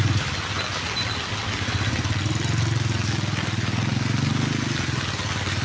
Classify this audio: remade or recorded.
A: recorded